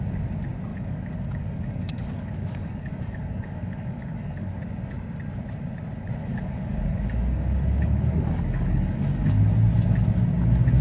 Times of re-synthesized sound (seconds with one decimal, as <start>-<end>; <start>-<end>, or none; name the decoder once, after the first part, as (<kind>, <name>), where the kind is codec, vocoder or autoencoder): 0.7-4.6 (codec, DAC); 6.2-9.5